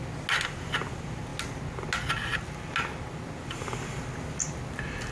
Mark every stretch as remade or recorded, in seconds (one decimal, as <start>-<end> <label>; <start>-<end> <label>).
0.0-5.1 recorded